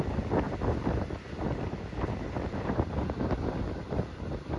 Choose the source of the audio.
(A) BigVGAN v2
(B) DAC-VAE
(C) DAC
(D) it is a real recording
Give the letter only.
D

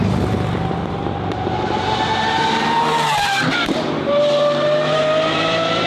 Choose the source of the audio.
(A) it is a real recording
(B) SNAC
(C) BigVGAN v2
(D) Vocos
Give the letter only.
C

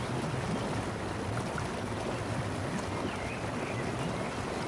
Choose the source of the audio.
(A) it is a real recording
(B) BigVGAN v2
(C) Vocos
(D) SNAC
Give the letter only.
A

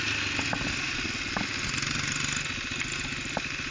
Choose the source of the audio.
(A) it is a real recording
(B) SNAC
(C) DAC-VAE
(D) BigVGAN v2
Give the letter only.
A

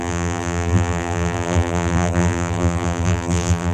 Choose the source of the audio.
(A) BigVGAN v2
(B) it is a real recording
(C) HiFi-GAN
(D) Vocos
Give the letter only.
A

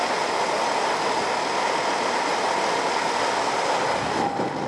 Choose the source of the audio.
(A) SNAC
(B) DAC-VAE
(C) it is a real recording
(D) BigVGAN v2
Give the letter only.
C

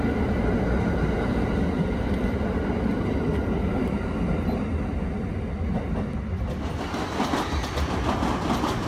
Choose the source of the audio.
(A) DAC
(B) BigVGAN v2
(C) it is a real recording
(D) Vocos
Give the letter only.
C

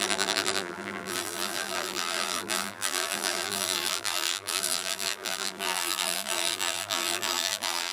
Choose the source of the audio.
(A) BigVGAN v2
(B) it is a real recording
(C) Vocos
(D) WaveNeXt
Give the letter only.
A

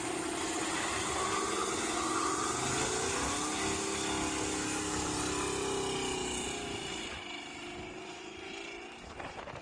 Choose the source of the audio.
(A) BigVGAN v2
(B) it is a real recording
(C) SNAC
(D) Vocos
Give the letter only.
B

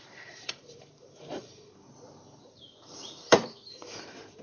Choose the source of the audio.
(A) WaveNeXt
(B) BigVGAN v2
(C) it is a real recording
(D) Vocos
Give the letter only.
B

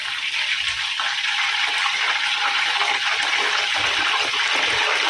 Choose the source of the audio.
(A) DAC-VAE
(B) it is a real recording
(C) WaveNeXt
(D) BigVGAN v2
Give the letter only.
D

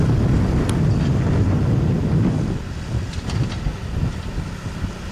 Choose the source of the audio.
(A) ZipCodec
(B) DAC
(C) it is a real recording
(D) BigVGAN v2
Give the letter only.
C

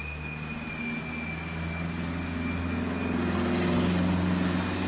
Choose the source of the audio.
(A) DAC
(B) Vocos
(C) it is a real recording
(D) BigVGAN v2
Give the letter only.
C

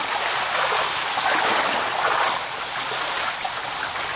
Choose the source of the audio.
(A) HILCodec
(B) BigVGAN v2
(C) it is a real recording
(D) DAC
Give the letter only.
C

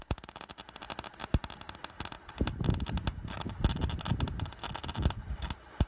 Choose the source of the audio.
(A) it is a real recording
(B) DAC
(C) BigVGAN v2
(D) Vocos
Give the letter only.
C